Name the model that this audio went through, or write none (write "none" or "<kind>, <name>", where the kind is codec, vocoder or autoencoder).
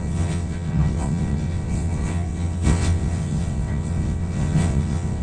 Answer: vocoder, WaveNeXt